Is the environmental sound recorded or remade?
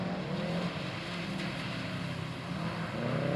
recorded